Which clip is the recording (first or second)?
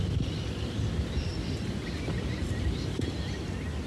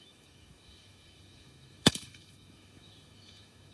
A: first